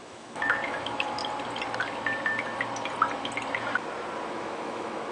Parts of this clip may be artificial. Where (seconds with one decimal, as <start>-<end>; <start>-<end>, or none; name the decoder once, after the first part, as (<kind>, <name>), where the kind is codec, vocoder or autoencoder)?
0.0-1.2 (autoencoder, DAC-VAE); 4.3-5.1